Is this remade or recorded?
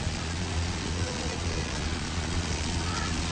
remade